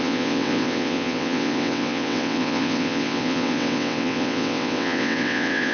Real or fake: fake